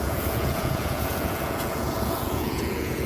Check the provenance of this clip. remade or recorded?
remade